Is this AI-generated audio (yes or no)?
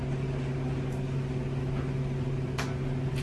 no